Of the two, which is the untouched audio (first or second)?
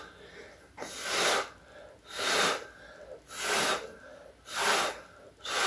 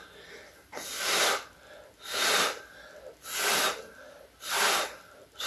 first